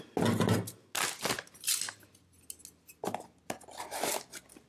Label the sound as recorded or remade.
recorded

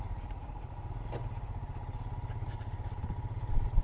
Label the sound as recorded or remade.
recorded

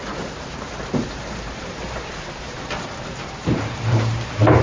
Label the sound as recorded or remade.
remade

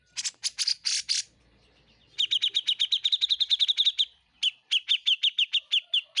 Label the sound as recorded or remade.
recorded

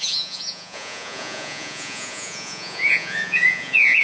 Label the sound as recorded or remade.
remade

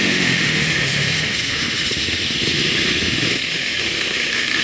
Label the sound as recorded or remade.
remade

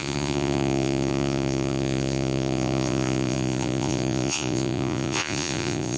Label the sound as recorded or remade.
remade